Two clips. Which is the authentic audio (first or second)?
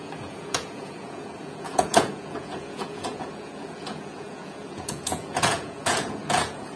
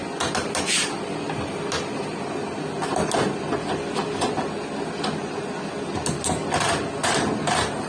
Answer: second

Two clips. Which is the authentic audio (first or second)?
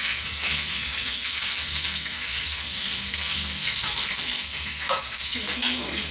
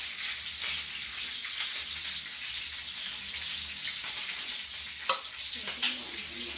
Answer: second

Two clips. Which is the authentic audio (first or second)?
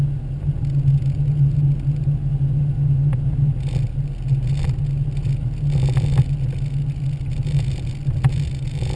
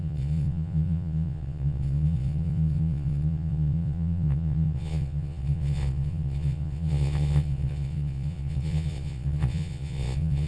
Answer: first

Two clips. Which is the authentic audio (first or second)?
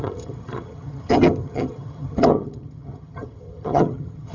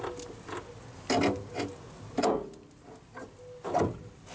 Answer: second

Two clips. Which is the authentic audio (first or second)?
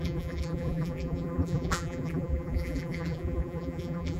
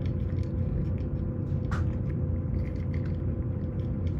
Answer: second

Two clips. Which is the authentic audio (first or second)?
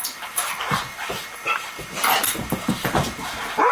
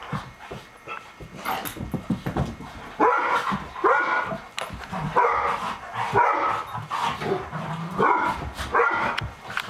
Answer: second